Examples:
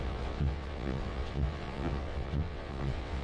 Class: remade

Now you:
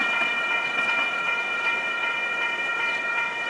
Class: remade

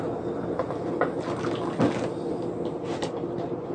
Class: recorded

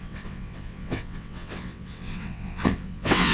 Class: remade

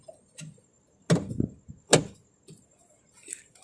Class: recorded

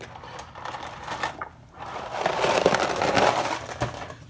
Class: recorded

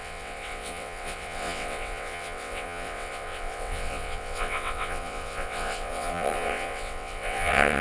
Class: remade